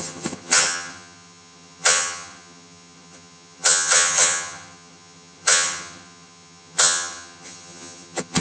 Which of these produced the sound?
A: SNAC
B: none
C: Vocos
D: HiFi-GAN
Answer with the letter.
D